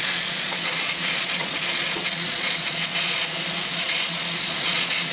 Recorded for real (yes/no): no